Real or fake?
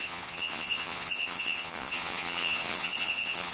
fake